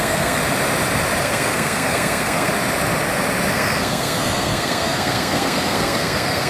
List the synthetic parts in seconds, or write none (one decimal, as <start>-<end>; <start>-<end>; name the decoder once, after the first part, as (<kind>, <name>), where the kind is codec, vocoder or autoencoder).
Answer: 0.0-0.4 (codec, SNAC); 1.2-2.5; 3.5-6.5